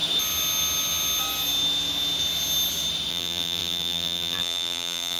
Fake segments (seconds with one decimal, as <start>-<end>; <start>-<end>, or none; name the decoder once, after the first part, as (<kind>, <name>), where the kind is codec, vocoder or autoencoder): 3.1-5.2 (vocoder, BigVGAN v2)